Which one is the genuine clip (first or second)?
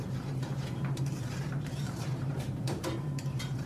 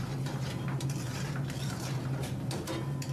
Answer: second